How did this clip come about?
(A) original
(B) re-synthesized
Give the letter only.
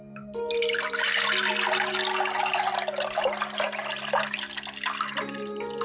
A